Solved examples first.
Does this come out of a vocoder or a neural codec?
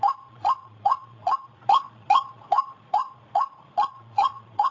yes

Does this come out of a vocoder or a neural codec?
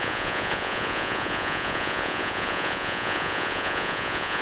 yes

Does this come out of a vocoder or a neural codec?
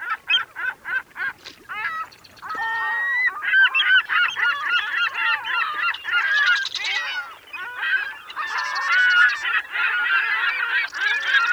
no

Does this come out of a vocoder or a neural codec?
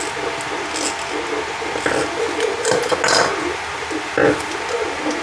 no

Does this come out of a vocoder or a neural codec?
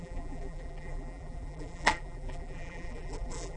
yes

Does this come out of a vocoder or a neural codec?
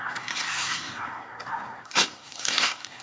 yes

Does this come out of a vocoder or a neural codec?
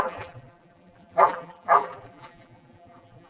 yes